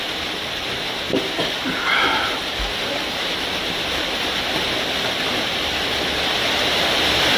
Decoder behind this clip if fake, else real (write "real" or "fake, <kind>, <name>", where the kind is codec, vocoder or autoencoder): real